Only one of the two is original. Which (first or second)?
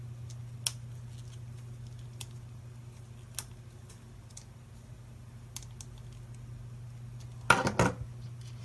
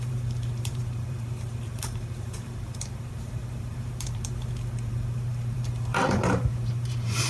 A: first